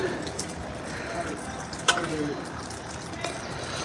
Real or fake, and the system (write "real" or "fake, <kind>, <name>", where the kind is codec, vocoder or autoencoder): real